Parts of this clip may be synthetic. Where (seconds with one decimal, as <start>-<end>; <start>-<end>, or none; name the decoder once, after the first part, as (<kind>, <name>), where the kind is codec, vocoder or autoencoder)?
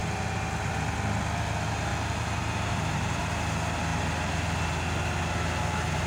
0.0-0.7 (vocoder, BigVGAN v2); 1.9-3.2